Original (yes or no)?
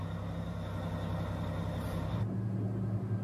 yes